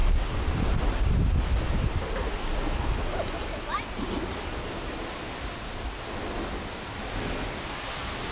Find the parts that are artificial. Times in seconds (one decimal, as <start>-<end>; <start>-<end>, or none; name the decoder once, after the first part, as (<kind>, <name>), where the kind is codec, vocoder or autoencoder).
0.0-1.2 (vocoder, BigVGAN v2)